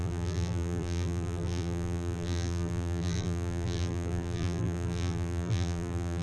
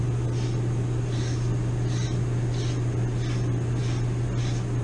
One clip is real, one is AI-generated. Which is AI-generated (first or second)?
first